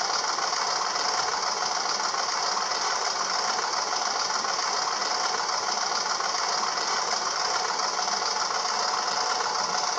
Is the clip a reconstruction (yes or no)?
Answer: no